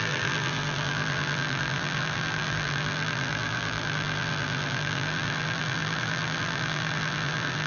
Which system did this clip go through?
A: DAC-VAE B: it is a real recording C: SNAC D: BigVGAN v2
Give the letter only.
D